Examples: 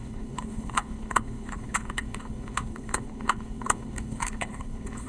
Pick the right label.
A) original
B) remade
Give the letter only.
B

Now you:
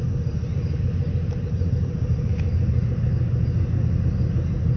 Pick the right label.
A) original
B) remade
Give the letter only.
A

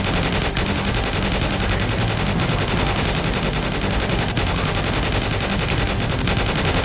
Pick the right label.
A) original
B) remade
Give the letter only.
A